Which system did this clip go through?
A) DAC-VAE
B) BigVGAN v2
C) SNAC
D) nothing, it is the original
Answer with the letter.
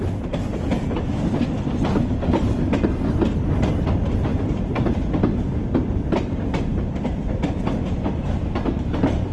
D